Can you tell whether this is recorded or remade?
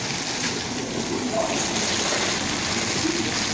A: recorded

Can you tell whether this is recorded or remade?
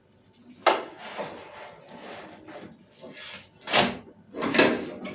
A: recorded